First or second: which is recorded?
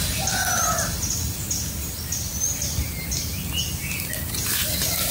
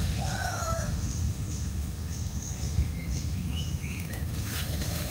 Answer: first